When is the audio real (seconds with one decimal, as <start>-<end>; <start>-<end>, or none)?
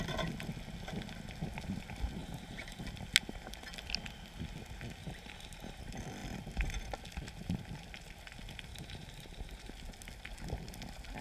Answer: 0.0-2.2; 2.8-5.0; 5.8-8.7; 9.7-11.2